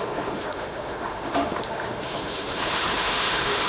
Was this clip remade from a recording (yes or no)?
yes